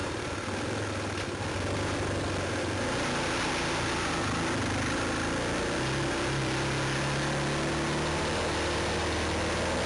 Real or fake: real